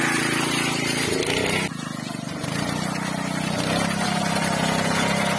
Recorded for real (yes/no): yes